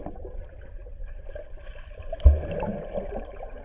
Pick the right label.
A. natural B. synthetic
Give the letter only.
A